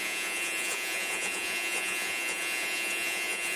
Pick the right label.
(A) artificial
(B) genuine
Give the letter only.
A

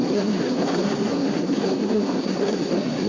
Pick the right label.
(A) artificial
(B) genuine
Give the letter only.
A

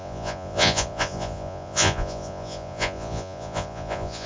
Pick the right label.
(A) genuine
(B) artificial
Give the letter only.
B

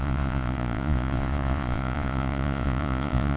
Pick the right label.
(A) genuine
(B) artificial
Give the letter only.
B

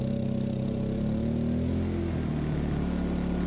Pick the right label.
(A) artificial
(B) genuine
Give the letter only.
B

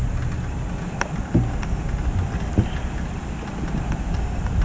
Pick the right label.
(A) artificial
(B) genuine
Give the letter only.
B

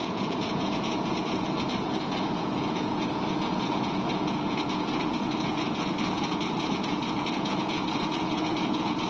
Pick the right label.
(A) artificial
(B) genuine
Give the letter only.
A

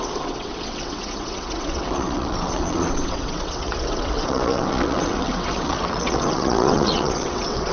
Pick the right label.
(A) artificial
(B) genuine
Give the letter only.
A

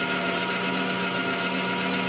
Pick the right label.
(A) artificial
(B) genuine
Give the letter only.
B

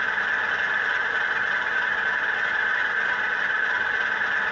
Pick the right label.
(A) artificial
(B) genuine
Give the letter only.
B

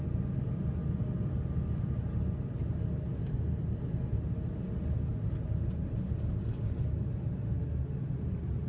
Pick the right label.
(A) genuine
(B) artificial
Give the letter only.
A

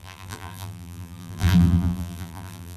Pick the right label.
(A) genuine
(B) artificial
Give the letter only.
B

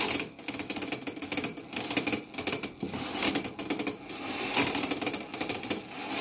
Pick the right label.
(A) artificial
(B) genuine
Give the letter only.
B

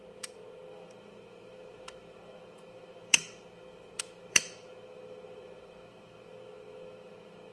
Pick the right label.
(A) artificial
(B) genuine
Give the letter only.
A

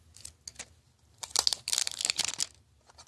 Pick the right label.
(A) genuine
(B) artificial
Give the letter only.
A